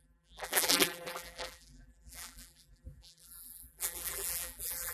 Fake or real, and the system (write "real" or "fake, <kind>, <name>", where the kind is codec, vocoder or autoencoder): fake, vocoder, BigVGAN v2